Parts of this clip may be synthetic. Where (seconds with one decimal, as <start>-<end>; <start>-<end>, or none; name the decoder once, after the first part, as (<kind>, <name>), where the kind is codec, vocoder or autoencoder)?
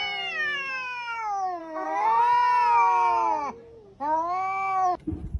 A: 1.6-2.2 (codec, SNAC)